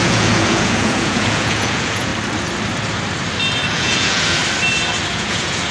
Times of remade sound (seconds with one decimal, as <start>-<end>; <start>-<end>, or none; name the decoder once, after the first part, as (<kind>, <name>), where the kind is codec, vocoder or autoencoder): 0.0-2.1 (vocoder, Vocos); 3.7-4.4; 5.1-5.7